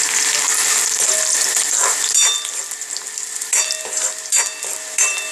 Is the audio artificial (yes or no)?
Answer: yes